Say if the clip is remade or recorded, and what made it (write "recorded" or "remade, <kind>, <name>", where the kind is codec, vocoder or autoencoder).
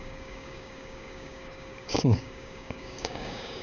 remade, codec, DAC